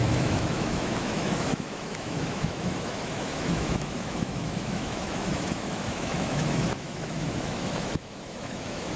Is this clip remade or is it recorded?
remade